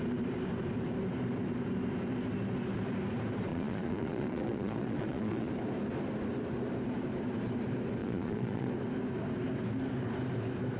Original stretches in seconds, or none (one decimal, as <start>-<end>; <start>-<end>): 0.0-3.5; 5.5-8.0; 8.7-10.8